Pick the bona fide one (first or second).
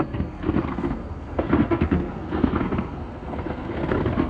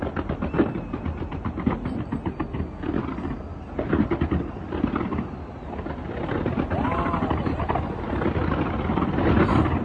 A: second